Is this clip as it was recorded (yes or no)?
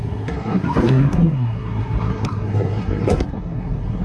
no